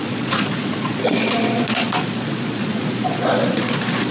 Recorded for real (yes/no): no